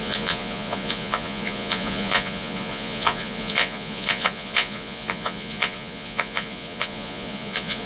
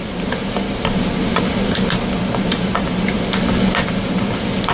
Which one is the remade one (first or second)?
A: first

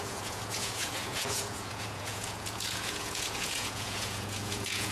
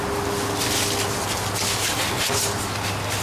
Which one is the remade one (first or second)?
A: first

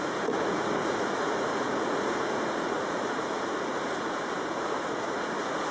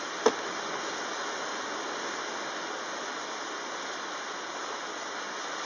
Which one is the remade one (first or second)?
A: first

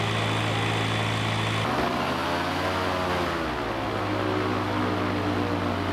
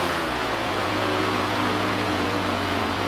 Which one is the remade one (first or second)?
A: second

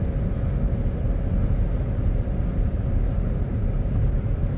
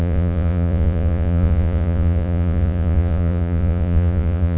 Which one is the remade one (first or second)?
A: second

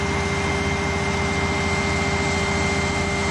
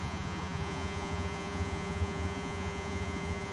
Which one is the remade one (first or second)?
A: second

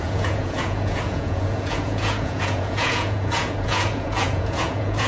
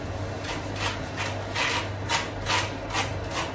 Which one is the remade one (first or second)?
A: first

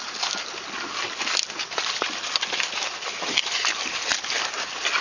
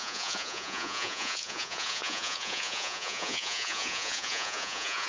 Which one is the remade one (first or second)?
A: second